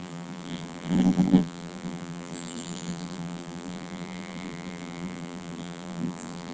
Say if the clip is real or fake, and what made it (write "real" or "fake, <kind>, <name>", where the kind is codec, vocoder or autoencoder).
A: fake, vocoder, BigVGAN v2